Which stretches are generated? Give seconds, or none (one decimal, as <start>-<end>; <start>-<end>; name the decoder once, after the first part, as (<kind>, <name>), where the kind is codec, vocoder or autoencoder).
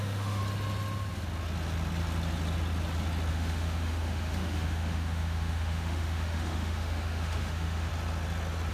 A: 0.0-0.4 (autoencoder, DAC-VAE); 3.3-7.9